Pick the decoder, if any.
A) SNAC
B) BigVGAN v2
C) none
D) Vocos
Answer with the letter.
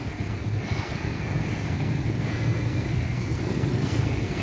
A